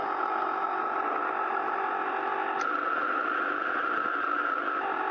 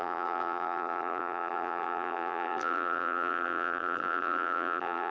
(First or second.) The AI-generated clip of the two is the second